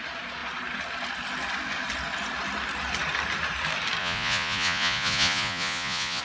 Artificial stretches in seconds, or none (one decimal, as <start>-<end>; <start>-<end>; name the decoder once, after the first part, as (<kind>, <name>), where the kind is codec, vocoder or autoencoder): 4.0-6.2 (vocoder, Vocos)

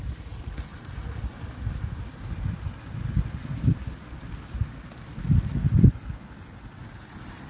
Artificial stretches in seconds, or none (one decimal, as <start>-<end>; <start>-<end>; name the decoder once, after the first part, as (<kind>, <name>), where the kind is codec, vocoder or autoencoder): none

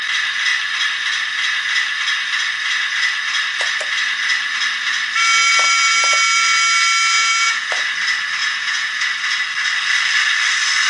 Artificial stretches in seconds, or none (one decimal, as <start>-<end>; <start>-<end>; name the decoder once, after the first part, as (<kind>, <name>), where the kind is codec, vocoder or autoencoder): 7.2-7.7 (vocoder, Vocos); 8.4-9.1

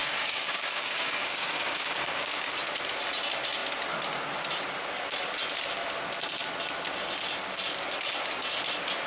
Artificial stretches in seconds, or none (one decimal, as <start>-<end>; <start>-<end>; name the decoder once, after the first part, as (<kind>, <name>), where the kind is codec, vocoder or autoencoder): 0.0-2.5 (codec, DAC)

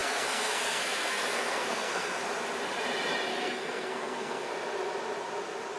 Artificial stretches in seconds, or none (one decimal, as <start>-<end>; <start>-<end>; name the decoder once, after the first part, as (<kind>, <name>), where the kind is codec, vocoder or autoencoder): 0.0-2.2 (codec, SNAC); 3.3-4.5

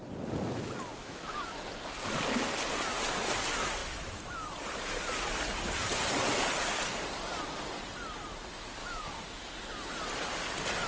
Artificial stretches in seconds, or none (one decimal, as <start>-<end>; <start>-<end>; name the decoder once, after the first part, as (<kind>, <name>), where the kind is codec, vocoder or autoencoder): 1.0-1.6 (autoencoder, DAC-VAE); 8.8-9.5

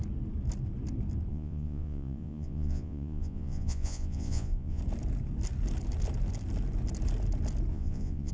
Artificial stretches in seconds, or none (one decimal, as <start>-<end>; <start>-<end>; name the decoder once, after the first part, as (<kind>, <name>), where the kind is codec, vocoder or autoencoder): 1.3-4.8 (vocoder, Vocos); 7.7-8.3